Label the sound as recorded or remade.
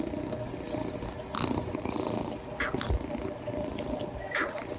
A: recorded